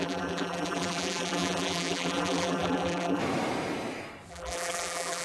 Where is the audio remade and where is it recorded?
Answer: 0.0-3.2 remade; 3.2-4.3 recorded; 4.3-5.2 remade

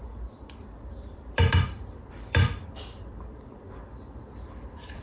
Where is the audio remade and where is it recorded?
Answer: 0.0-5.0 remade

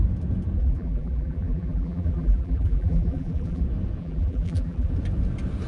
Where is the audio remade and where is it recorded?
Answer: 0.0-0.6 recorded; 0.6-3.6 remade; 3.6-4.0 recorded; 4.0-4.9 remade; 4.9-5.7 recorded

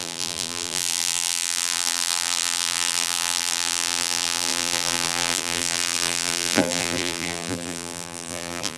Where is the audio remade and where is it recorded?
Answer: 0.0-8.8 remade

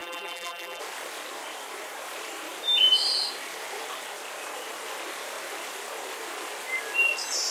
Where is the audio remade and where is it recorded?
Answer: 0.0-0.8 remade; 0.8-7.5 recorded

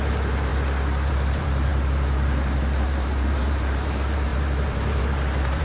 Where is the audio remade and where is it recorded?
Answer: 0.0-0.5 remade; 0.5-1.1 recorded; 1.1-5.6 remade